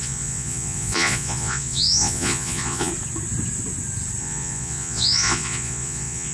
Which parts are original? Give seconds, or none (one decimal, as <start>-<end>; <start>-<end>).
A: 2.9-4.2